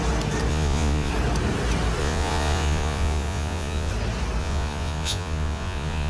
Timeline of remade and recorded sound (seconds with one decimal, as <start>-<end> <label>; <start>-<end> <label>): 0.0-0.5 recorded; 0.5-1.1 remade; 1.1-2.0 recorded; 2.0-3.9 remade; 3.9-4.4 recorded; 4.4-6.1 remade

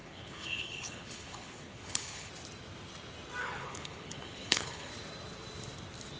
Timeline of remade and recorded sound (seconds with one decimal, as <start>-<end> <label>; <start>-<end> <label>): 0.0-2.3 remade; 2.3-3.4 recorded; 3.4-4.9 remade; 4.9-6.2 recorded